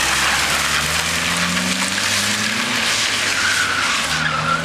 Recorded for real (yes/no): yes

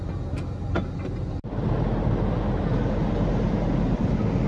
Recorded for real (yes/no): yes